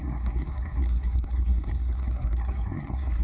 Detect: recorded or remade remade